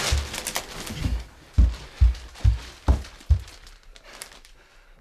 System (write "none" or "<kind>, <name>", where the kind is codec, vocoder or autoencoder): none